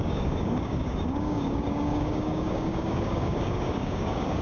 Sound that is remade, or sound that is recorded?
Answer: remade